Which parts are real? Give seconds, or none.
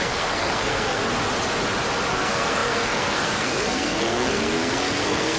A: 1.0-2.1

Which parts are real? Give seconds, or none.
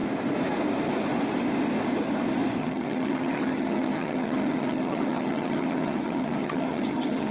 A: 0.0-2.6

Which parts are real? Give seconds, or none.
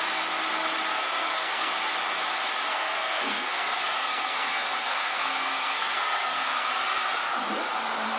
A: 0.0-0.9; 1.7-2.7; 6.7-8.2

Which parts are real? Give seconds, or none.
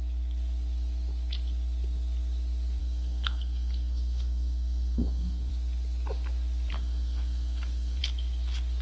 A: 0.0-2.8; 5.5-6.7; 8.0-8.8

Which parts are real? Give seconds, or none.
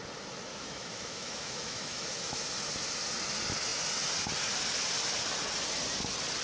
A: 0.0-0.5; 2.4-6.4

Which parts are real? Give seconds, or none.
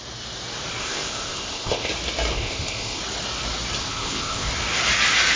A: 0.0-0.8; 1.9-2.3; 3.0-3.8; 4.5-5.4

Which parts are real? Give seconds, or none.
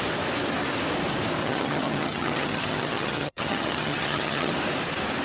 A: 0.0-1.4; 4.5-5.2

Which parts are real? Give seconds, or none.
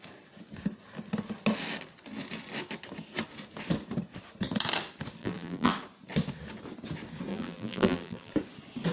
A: 0.0-5.2; 5.7-7.3; 8.3-8.9